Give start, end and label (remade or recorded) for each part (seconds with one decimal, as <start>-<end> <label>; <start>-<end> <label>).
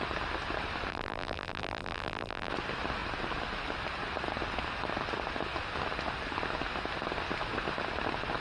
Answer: 0.0-0.9 recorded; 0.9-2.5 remade; 2.5-8.4 recorded